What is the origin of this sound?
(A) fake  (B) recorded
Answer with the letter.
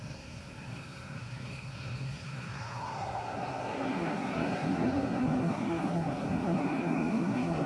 A